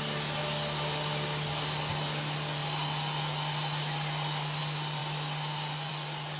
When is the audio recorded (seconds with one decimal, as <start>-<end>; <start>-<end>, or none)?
0.0-0.4; 1.8-6.4